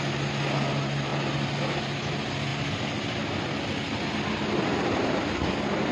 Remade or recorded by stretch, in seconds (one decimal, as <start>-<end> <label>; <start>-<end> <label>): 0.0-5.9 recorded